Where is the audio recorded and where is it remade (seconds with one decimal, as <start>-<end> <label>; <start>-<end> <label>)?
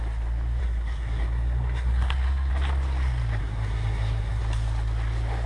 0.0-0.6 recorded; 0.6-2.5 remade; 2.5-3.4 recorded; 3.4-4.4 remade; 4.4-5.5 recorded